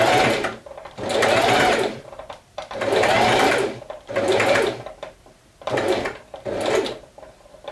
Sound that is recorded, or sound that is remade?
remade